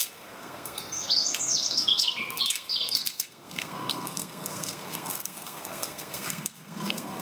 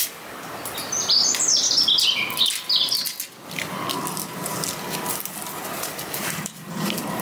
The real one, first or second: second